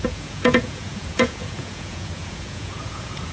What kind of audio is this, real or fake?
fake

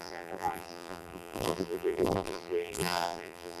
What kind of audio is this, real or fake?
fake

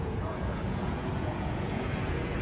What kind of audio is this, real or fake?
fake